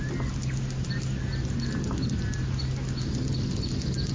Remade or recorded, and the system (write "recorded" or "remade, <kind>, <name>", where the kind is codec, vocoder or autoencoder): recorded